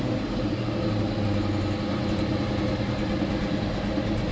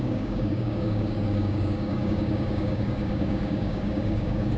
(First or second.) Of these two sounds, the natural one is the first